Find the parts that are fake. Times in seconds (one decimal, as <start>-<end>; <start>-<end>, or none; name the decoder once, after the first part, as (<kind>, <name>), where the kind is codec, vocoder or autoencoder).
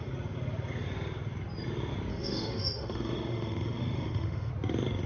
2.1-4.5 (autoencoder, DAC-VAE)